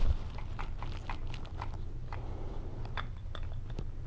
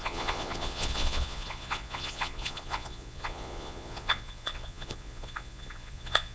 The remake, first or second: second